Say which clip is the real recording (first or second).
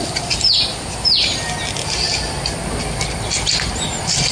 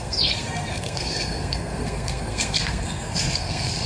first